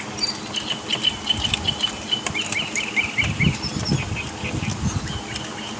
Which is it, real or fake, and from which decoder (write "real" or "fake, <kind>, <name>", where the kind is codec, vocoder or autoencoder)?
real